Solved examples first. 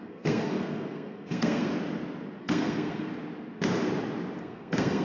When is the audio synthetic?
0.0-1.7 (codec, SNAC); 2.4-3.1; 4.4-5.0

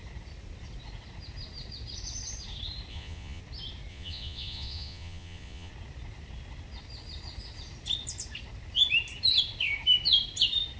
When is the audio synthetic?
2.9-3.4 (vocoder, Vocos); 3.9-5.7

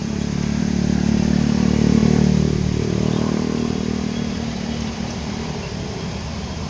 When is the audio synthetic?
0.0-0.6 (vocoder, BigVGAN v2); 2.0-6.0

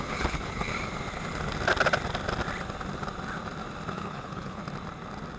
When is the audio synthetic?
0.0-0.7 (codec, HILCodec); 3.9-4.6

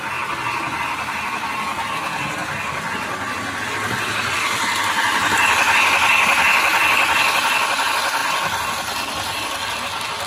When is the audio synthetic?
none